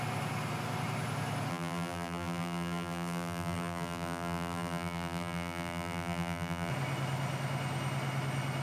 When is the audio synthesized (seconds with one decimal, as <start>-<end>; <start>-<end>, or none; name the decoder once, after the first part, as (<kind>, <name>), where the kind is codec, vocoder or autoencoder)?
1.5-6.7 (vocoder, BigVGAN v2)